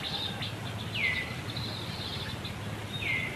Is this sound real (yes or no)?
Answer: yes